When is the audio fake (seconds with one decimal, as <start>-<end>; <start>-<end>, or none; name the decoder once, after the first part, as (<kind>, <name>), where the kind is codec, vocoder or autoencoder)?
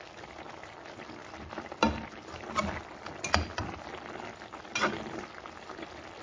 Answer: none